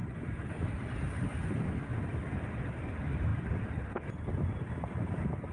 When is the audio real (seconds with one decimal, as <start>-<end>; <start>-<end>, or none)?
0.0-5.5